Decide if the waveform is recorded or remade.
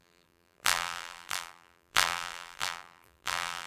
remade